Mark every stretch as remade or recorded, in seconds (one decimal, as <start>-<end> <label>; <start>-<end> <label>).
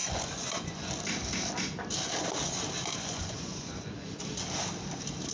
0.0-0.9 remade; 0.9-2.9 recorded; 2.9-4.2 remade; 4.2-5.3 recorded